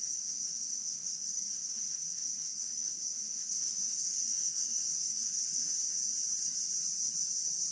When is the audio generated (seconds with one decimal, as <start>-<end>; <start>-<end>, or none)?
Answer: 0.0-6.0